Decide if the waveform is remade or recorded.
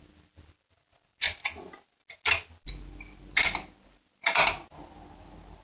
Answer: recorded